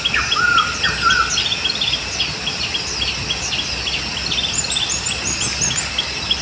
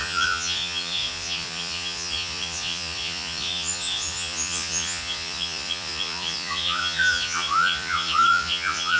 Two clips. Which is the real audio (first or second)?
first